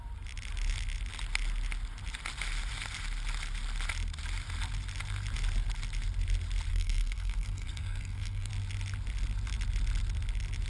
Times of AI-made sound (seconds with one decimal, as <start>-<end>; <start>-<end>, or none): 6.7-8.5